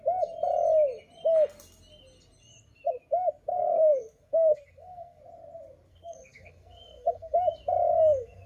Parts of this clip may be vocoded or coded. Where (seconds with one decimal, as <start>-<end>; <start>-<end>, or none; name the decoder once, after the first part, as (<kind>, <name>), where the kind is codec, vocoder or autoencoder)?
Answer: 3.5-5.2 (codec, SNAC); 5.9-7.4; 7.9-8.5